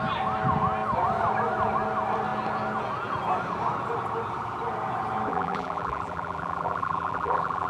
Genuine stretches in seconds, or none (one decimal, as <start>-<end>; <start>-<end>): 0.0-5.3